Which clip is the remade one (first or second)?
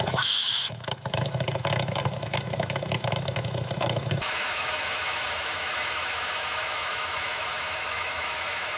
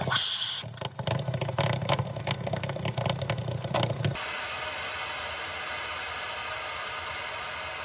first